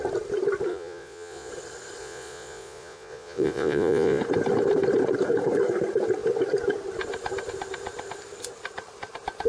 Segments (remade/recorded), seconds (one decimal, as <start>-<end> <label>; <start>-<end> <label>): 0.0-0.7 recorded; 0.7-1.5 remade; 1.5-2.0 recorded; 2.0-4.2 remade; 4.2-9.5 recorded